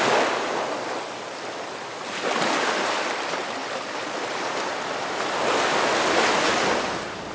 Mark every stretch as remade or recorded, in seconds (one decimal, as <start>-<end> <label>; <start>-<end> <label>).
0.0-3.6 recorded; 3.6-5.4 remade; 5.4-7.3 recorded